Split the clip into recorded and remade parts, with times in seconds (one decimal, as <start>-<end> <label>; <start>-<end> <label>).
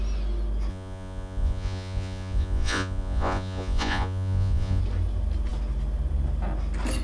0.0-0.7 recorded; 0.7-4.8 remade; 4.8-7.0 recorded